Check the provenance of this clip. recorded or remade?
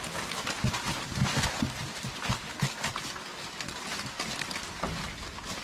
recorded